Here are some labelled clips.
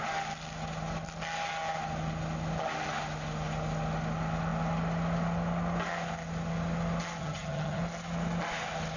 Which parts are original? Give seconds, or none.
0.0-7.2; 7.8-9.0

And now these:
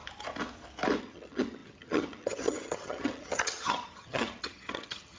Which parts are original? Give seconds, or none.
0.0-1.0

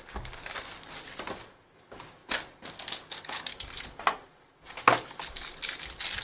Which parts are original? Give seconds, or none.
0.0-6.2